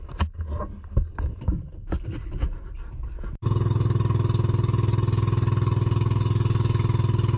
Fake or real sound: real